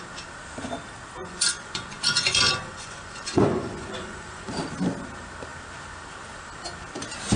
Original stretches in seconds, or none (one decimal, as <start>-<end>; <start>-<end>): 0.0-1.2; 4.5-7.4